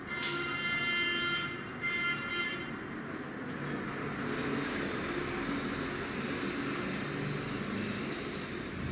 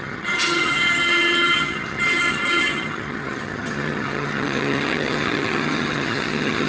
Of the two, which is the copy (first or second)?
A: second